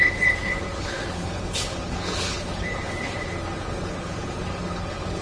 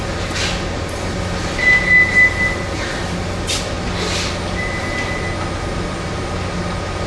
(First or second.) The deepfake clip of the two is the first